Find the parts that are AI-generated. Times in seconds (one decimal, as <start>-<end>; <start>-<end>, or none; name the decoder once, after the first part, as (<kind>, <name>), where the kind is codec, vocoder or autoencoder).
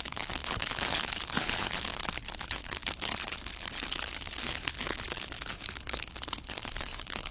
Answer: 0.0-1.9 (codec, HILCodec); 2.4-7.3